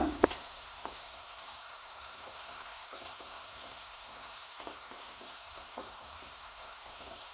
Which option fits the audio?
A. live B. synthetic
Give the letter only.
B